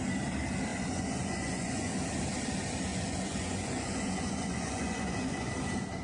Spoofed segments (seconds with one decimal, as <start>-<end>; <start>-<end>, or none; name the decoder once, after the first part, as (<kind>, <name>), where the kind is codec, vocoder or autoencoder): 0.7-1.9 (vocoder, Vocos); 2.9-5.5